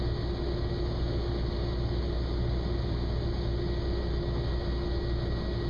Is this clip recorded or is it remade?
recorded